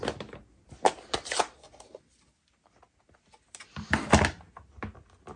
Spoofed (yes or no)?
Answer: no